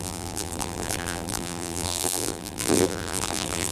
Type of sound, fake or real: fake